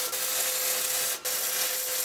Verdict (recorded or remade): recorded